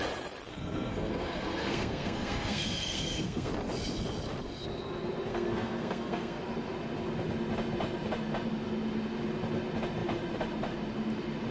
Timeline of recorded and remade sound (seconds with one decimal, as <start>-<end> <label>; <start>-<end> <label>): 0.0-0.5 recorded; 0.5-3.5 remade; 3.5-5.3 recorded; 5.3-6.4 remade; 6.4-11.5 recorded